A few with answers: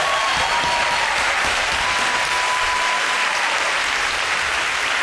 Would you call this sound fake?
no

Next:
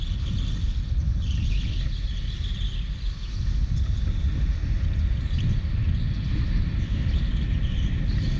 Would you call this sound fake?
no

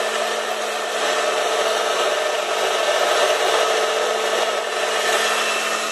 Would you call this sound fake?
no